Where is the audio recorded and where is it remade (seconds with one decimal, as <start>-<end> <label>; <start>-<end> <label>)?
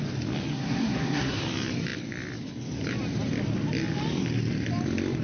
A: 0.0-0.5 recorded; 0.5-1.4 remade; 1.4-5.2 recorded